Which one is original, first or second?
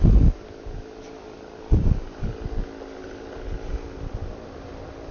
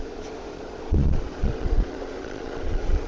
first